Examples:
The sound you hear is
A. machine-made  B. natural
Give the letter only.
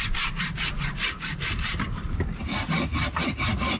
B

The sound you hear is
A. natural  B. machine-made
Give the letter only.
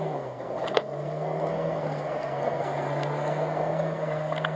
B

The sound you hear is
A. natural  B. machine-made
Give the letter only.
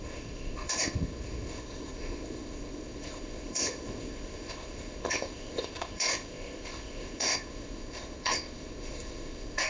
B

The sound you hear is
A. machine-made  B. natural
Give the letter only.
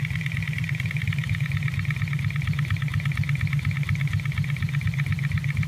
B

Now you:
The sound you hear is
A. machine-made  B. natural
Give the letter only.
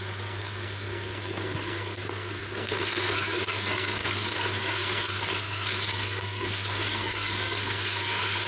A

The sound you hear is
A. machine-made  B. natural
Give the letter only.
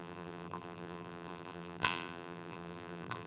A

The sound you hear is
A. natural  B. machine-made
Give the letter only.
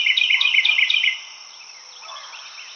B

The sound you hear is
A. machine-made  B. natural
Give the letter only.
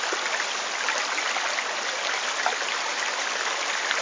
B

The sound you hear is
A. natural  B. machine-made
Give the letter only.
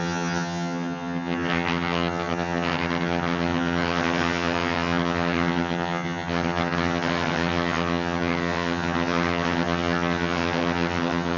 B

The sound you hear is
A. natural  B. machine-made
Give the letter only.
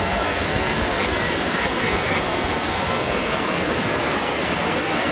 B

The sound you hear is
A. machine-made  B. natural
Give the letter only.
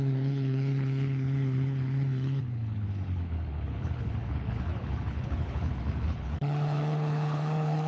A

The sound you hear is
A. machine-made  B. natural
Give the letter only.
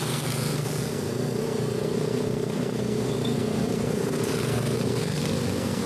A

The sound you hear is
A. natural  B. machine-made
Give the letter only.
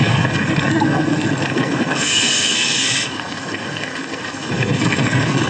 B